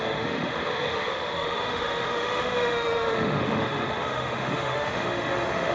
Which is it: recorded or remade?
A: remade